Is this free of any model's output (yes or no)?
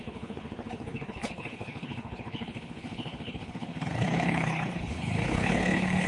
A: no